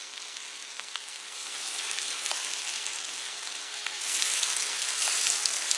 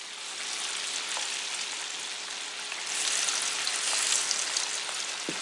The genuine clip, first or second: second